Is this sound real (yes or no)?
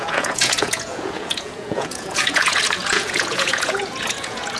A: no